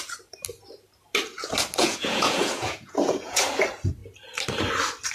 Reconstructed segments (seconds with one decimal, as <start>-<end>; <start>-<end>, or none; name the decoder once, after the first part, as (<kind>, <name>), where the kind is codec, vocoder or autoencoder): 1.8-3.4 (vocoder, Vocos)